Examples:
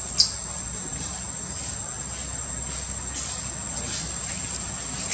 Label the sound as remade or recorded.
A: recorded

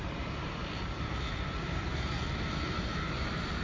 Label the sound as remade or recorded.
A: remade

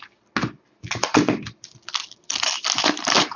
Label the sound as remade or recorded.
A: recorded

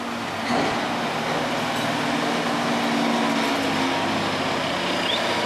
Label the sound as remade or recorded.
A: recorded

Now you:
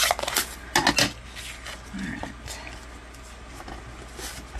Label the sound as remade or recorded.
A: recorded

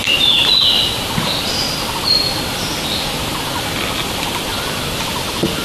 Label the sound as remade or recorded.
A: recorded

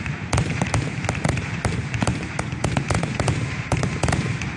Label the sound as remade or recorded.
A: remade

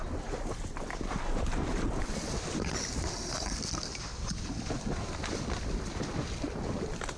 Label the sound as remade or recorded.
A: recorded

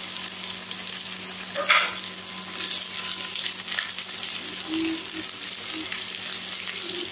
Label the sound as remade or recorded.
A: recorded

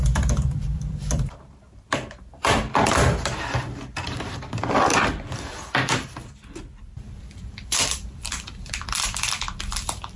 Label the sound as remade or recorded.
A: remade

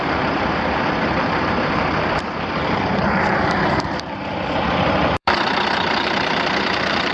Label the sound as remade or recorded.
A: remade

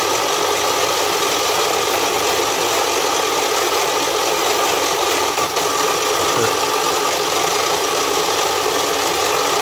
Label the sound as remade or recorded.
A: remade